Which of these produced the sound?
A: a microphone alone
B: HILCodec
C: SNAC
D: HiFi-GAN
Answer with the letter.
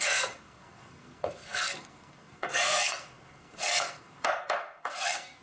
C